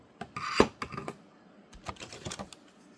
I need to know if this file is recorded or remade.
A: recorded